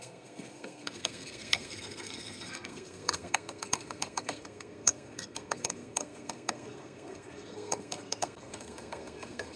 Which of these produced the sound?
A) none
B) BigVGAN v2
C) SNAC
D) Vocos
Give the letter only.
C